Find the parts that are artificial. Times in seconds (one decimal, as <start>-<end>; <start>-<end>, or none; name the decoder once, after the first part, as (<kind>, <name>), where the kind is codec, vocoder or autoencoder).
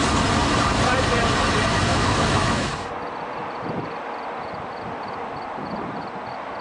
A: 1.9-2.7 (autoencoder, DAC-VAE)